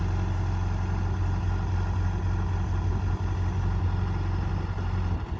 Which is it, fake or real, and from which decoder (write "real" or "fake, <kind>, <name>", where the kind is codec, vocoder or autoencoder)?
real